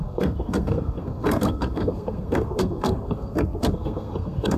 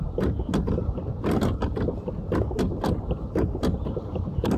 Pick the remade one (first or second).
first